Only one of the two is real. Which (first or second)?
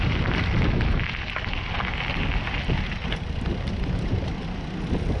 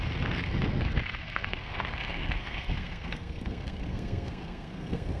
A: first